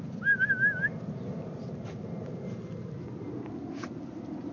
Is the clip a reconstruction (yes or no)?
no